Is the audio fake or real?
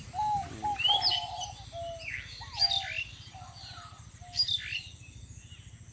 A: real